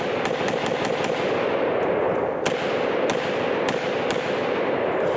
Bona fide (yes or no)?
yes